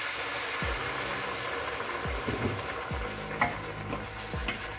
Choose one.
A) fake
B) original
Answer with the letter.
B